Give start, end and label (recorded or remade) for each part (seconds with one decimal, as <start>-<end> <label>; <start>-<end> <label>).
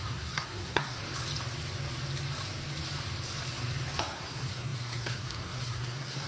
0.0-1.0 remade; 1.0-4.0 recorded; 4.0-6.3 remade